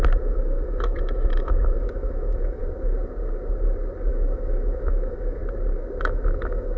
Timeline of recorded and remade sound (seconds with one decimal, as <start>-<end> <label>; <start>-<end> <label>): 0.0-2.6 remade; 2.6-4.1 recorded; 4.1-5.4 remade; 5.4-6.0 recorded; 6.0-6.8 remade